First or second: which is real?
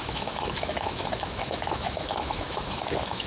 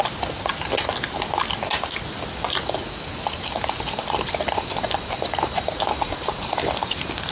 second